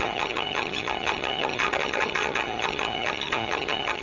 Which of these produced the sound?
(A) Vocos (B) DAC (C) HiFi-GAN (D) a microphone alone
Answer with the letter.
C